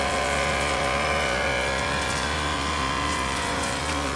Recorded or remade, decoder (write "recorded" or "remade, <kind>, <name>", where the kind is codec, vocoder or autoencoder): remade, vocoder, Vocos